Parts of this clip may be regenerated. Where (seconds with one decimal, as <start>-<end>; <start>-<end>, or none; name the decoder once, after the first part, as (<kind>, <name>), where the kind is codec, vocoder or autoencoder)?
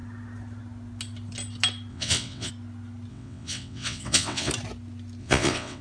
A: 1.9-2.5 (vocoder, WaveNeXt); 3.1-4.5; 5.2-5.8